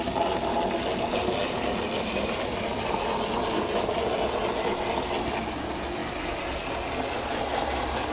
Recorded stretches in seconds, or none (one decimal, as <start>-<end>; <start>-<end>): 0.0-1.4; 3.0-8.1